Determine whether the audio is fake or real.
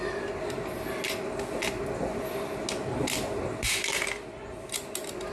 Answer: real